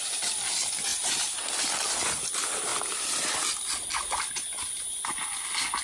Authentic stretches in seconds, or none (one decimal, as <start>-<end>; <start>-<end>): 0.0-0.9; 1.4-5.8